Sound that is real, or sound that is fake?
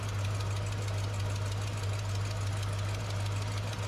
real